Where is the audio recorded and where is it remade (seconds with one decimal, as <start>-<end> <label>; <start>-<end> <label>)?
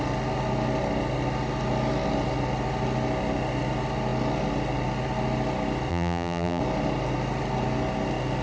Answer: 0.0-5.9 recorded; 5.9-6.6 remade; 6.6-8.4 recorded